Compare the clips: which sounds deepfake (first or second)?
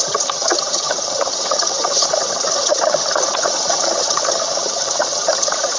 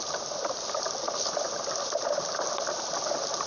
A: first